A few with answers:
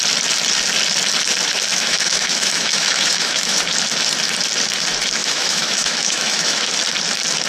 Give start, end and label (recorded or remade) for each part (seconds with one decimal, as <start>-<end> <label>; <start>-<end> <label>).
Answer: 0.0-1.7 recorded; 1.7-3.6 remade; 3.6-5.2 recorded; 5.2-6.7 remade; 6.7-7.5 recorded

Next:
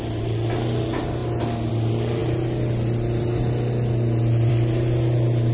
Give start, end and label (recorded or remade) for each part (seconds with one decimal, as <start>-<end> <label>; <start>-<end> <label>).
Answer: 0.0-5.5 recorded

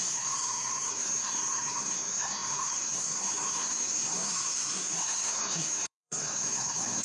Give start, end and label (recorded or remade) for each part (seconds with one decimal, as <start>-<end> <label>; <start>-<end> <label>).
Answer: 0.0-7.0 remade